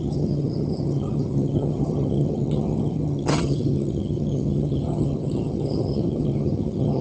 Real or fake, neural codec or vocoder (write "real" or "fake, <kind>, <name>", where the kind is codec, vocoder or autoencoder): fake, vocoder, HiFi-GAN